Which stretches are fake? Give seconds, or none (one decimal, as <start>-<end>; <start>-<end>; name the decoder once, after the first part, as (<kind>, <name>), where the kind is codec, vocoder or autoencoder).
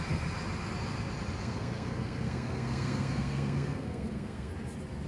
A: 1.4-4.5 (codec, SNAC)